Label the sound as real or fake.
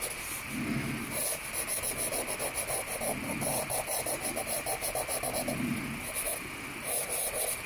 real